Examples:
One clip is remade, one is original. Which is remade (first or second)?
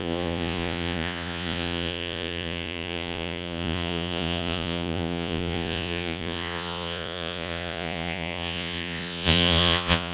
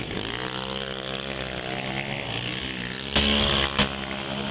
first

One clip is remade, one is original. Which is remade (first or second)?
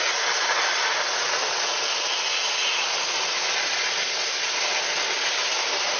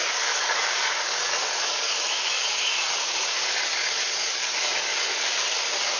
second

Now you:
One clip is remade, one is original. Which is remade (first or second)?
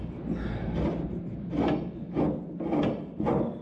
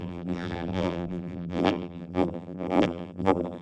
second